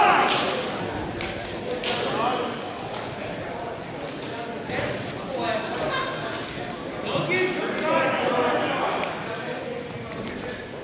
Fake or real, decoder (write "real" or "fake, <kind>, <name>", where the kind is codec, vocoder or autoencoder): real